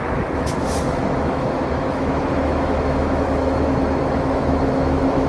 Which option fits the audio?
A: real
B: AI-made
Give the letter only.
B